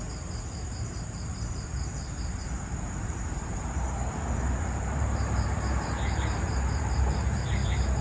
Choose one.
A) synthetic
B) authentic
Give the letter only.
A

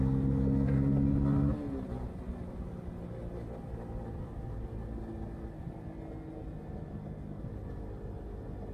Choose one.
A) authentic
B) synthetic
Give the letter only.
A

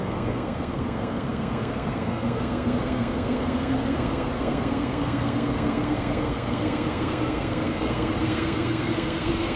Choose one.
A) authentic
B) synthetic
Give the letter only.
B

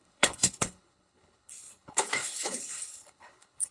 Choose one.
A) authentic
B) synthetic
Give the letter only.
B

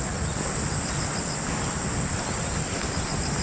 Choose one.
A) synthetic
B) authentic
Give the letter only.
B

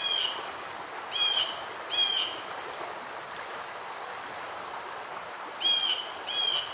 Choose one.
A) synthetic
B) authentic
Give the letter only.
B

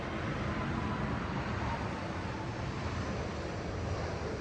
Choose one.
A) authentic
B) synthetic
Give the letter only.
B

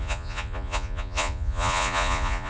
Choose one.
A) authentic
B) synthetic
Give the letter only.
B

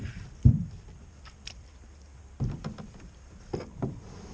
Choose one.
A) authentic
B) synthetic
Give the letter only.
B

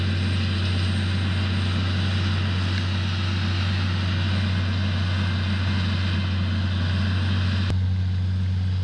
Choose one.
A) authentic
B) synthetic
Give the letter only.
A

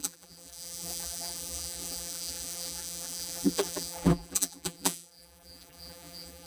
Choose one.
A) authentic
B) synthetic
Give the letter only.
B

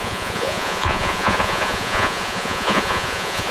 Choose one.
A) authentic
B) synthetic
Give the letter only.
B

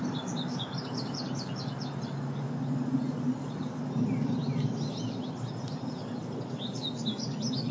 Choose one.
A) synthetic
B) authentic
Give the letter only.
B